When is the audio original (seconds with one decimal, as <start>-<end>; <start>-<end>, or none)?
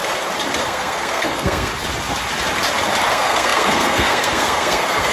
0.0-0.6; 1.7-3.1